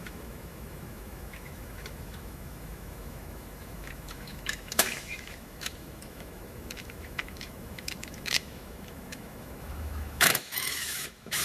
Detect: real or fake fake